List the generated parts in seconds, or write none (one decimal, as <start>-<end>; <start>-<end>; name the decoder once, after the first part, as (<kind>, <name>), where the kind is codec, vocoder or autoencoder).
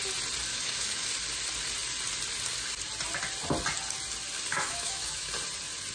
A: 0.5-1.1 (autoencoder, DAC-VAE); 4.5-5.3